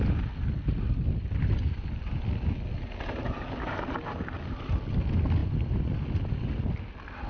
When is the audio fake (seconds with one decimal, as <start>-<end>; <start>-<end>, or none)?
none